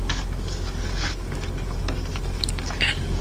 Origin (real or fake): fake